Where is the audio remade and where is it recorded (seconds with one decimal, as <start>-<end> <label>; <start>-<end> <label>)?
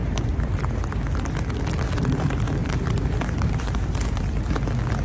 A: 0.0-0.7 remade; 0.7-2.6 recorded; 2.6-4.2 remade; 4.2-5.0 recorded